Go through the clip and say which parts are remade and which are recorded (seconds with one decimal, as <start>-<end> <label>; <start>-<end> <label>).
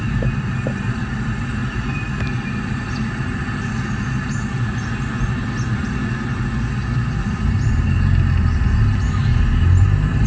0.0-10.3 recorded